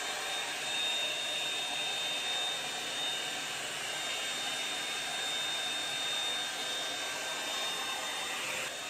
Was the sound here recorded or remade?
recorded